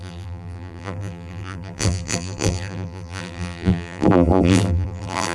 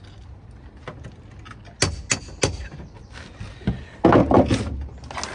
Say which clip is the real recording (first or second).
second